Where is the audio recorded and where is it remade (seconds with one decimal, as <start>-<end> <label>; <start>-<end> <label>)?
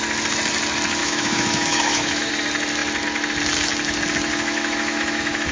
0.0-1.0 recorded; 1.0-2.3 remade; 2.3-4.3 recorded; 4.3-5.5 remade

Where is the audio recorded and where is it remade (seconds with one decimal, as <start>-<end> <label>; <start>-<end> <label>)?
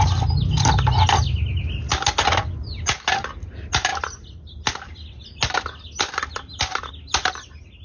0.0-7.8 recorded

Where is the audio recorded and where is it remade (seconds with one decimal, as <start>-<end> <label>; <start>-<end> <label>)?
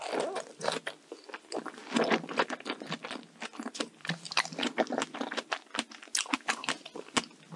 0.0-7.6 recorded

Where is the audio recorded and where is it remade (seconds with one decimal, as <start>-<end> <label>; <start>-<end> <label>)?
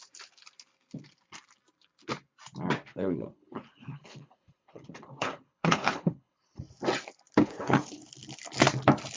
0.0-2.9 recorded; 2.9-6.6 remade; 6.6-7.4 recorded; 7.4-8.0 remade; 8.0-9.2 recorded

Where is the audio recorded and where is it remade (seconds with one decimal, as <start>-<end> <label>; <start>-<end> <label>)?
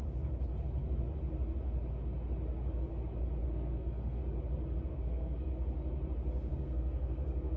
0.0-3.4 recorded; 3.4-4.2 remade; 4.2-4.9 recorded; 4.9-5.5 remade; 5.5-6.5 recorded; 6.5-7.6 remade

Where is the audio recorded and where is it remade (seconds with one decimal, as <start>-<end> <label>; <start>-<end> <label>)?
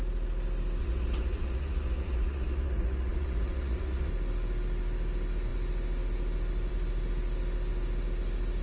0.0-0.8 recorded; 0.8-4.1 remade; 4.1-8.6 recorded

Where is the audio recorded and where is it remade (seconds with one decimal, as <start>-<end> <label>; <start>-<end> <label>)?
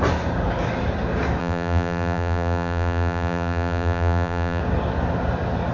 0.0-1.4 recorded; 1.4-4.6 remade; 4.6-5.7 recorded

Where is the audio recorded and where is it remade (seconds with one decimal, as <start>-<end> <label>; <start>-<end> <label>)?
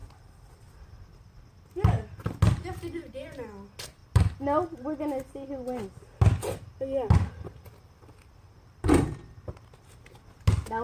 0.0-10.8 recorded